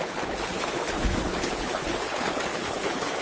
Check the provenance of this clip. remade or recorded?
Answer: remade